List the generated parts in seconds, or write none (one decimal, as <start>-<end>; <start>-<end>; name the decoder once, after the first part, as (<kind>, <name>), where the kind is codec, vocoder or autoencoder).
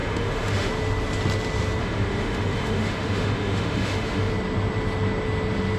0.0-0.7 (autoencoder, DAC-VAE); 1.8-4.3